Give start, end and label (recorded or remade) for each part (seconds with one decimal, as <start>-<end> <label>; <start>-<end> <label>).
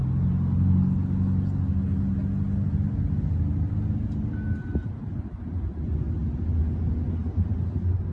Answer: 0.0-8.1 recorded